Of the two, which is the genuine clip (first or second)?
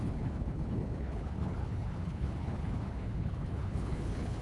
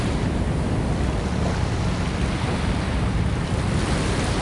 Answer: second